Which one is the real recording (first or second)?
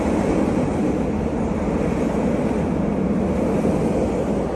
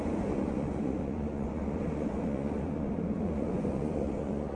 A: first